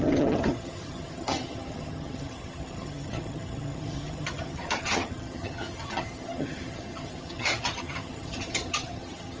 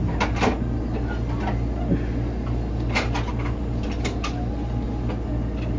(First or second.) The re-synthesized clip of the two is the first